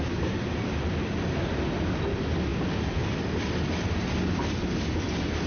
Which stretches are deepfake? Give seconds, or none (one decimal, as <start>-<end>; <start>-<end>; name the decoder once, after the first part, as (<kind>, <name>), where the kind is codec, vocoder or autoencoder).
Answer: none